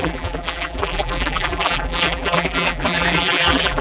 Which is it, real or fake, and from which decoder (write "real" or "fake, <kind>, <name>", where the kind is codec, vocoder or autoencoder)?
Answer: fake, vocoder, BigVGAN v2